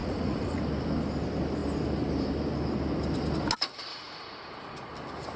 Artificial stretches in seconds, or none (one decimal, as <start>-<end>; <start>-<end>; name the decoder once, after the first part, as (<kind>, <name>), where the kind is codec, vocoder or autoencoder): 0.0-0.6 (vocoder, Vocos); 3.9-4.9